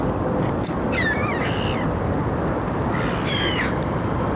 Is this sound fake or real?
real